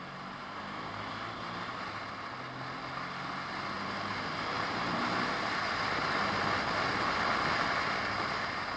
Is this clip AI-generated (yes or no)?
no